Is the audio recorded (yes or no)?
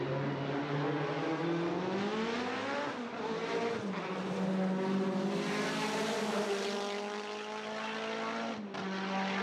yes